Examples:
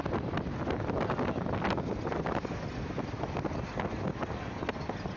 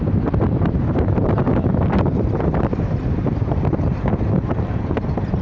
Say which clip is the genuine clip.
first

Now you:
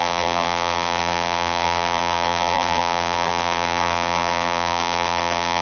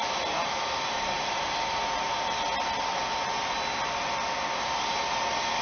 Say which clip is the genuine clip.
second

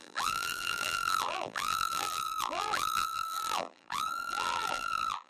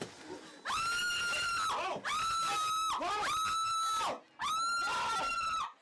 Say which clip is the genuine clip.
second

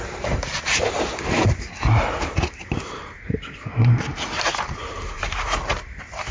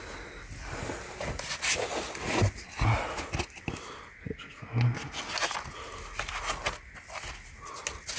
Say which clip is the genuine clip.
second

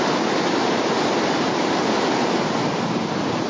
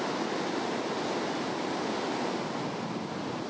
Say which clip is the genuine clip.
second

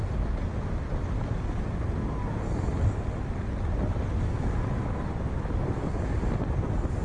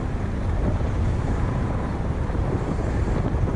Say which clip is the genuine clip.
first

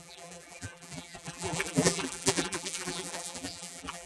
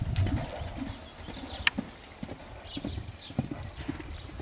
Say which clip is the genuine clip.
second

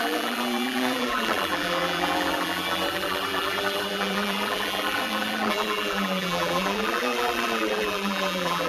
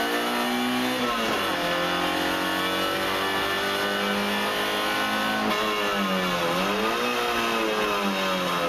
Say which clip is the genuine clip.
second